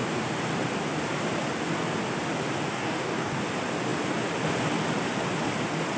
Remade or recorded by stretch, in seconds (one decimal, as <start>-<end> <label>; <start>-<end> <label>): 0.0-2.7 recorded; 2.7-3.4 remade; 3.4-6.0 recorded